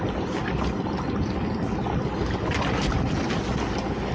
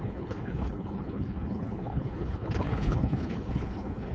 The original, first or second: first